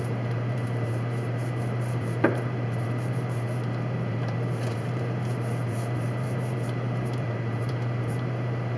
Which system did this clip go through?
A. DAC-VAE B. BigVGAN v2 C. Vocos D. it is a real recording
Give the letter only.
B